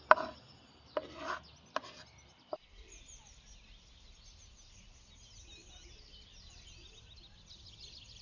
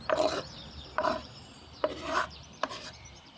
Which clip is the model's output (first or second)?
second